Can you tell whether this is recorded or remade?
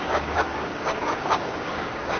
remade